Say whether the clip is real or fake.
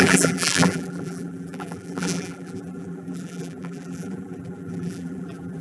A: fake